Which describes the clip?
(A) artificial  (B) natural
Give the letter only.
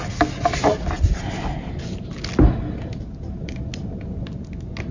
B